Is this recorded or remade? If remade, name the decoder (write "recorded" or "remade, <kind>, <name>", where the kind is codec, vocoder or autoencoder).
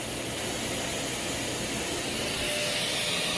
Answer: recorded